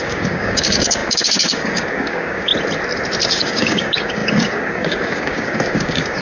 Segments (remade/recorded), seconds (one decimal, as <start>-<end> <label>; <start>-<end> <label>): 0.0-2.5 remade; 2.5-3.3 recorded; 3.3-6.2 remade